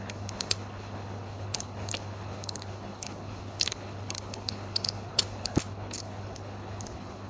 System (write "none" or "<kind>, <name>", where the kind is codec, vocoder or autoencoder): codec, HILCodec